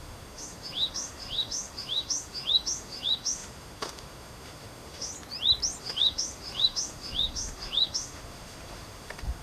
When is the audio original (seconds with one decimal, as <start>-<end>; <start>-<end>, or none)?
5.1-5.8